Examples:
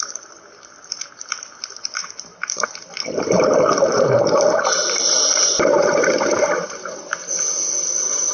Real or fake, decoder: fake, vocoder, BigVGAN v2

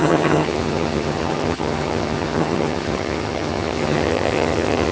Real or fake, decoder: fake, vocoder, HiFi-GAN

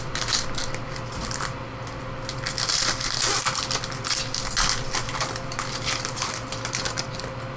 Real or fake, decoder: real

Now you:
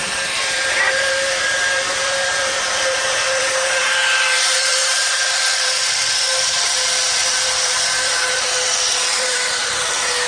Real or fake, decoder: fake, vocoder, BigVGAN v2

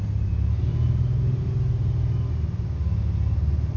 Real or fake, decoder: real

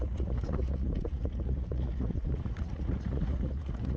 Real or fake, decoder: fake, vocoder, Vocos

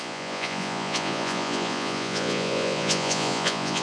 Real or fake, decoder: fake, vocoder, Vocos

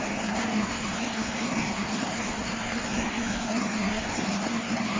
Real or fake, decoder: fake, codec, SNAC